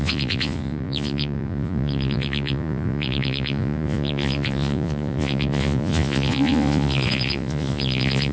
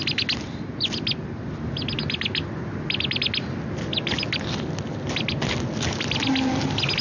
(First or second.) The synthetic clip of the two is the first